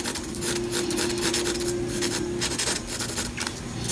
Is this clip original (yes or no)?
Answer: yes